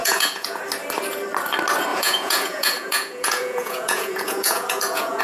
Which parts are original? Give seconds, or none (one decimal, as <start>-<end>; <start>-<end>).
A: 0.6-1.9